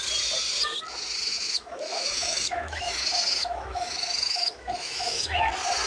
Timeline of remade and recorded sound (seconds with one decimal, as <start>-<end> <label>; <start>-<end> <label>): 0.0-1.3 recorded; 1.3-2.9 remade; 2.9-3.4 recorded; 3.4-5.5 remade; 5.5-5.9 recorded